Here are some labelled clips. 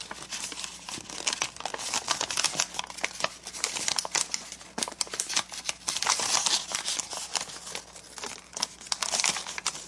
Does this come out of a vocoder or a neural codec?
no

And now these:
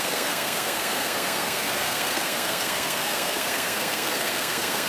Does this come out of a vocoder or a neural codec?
yes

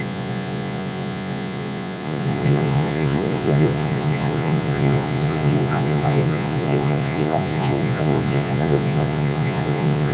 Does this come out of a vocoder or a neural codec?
yes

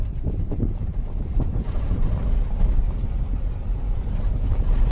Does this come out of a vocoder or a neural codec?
no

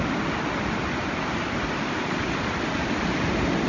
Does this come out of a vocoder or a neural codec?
no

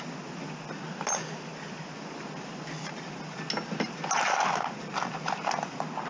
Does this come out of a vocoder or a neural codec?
no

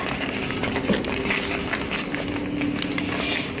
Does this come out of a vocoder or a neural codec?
no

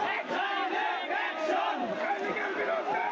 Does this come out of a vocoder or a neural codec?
no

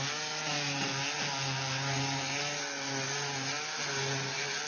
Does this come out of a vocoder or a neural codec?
no